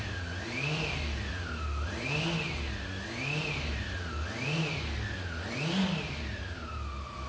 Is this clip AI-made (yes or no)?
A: no